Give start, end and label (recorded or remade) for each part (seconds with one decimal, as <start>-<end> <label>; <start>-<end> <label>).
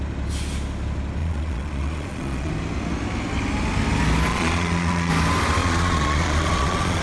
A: 0.0-1.2 recorded; 1.2-2.5 remade; 2.5-4.3 recorded; 4.3-5.1 remade; 5.1-5.6 recorded; 5.6-7.0 remade